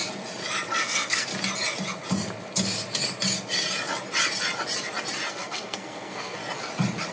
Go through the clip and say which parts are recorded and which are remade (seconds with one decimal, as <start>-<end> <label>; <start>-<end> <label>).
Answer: 0.0-0.7 recorded; 0.7-1.3 remade; 1.3-5.3 recorded; 5.3-6.4 remade; 6.4-7.1 recorded